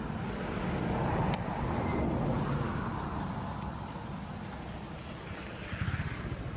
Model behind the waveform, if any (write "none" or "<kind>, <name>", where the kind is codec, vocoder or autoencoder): none